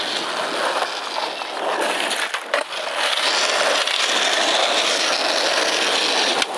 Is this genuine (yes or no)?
yes